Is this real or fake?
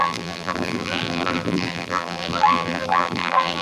fake